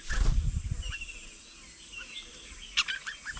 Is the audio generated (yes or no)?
no